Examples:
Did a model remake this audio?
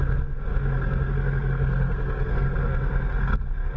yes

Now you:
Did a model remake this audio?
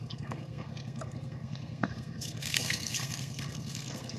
yes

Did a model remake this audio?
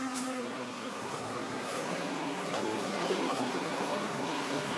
yes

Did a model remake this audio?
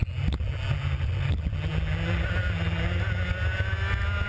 no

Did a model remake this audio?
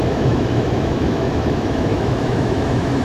yes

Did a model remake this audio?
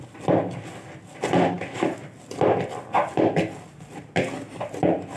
no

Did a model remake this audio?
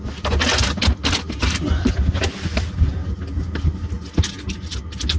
no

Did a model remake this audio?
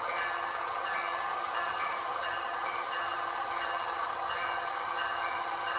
yes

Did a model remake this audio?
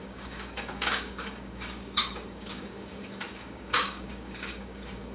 yes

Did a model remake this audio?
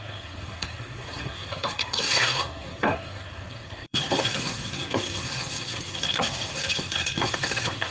yes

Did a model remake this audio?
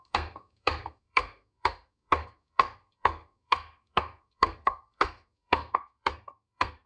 yes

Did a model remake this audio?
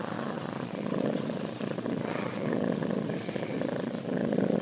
yes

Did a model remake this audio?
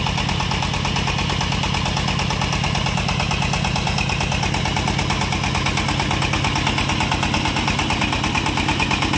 no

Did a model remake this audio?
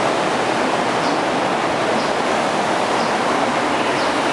no